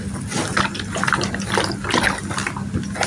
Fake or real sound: real